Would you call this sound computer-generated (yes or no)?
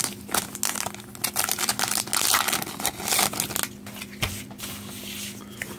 no